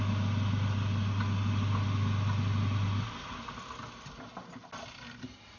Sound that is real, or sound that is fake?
real